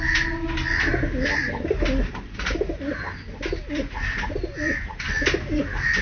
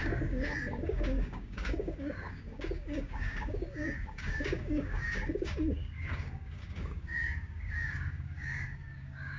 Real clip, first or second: first